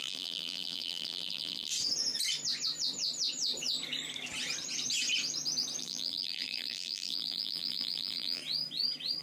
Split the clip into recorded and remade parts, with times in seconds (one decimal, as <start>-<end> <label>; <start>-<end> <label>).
0.0-1.7 remade; 1.7-5.8 recorded; 5.8-8.4 remade; 8.4-9.2 recorded